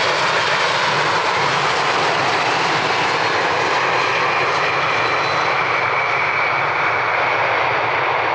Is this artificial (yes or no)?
no